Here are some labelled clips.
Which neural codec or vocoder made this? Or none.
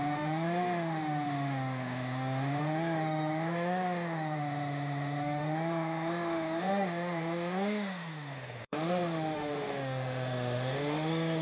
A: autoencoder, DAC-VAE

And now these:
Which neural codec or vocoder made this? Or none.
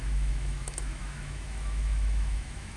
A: autoencoder, DAC-VAE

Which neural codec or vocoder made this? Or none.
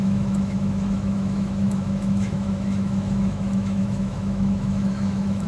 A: autoencoder, DAC-VAE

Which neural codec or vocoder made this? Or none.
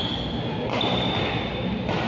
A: none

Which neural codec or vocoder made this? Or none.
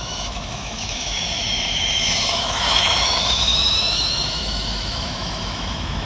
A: autoencoder, DAC-VAE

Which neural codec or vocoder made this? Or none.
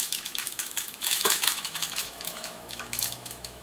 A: autoencoder, DAC-VAE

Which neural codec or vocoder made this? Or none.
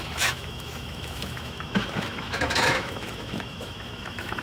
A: autoencoder, DAC-VAE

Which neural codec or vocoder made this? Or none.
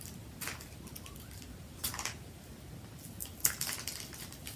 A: none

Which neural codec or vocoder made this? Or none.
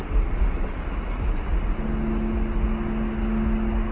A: none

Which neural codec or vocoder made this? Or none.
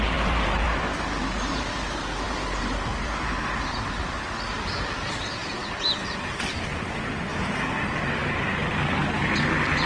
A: none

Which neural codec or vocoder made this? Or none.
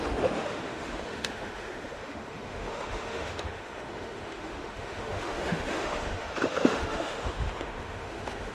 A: autoencoder, DAC-VAE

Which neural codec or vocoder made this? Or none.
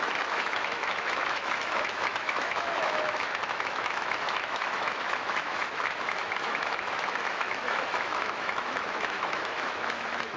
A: autoencoder, DAC-VAE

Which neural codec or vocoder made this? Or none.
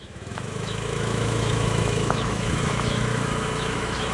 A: autoencoder, DAC-VAE